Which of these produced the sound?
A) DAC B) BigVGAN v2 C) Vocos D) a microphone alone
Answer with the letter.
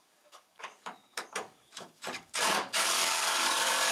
A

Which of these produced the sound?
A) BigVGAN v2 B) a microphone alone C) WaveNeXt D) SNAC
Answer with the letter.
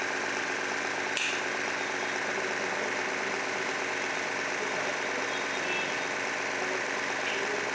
B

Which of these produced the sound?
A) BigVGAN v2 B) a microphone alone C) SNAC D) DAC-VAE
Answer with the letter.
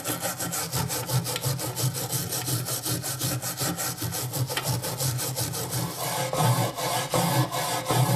B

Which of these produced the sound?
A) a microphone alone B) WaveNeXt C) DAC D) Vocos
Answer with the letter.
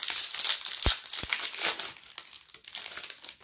A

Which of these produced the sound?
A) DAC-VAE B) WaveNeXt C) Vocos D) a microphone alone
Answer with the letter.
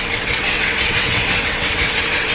B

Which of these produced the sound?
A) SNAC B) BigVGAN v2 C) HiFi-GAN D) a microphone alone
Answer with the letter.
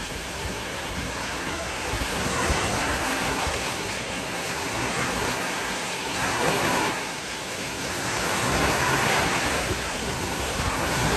A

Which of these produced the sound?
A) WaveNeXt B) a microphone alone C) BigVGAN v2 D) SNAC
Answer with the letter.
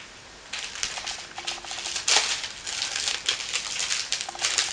B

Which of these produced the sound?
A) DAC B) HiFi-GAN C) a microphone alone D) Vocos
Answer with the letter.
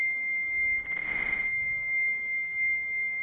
C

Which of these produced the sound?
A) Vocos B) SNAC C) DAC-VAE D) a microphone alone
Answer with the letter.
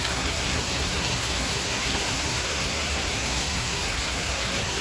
B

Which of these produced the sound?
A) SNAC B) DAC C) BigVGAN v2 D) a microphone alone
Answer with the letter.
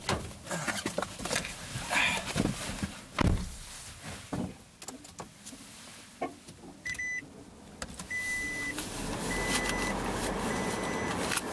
D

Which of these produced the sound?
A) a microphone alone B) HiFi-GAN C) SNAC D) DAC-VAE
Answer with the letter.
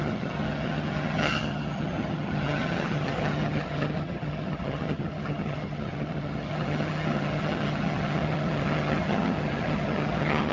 B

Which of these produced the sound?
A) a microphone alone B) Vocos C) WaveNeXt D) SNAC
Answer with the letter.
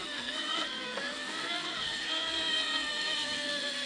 D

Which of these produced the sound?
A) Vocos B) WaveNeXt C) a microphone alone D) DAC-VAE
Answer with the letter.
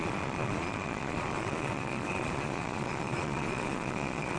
A